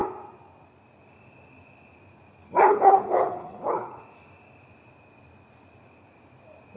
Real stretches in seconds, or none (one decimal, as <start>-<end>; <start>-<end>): 0.0-2.4; 4.0-6.8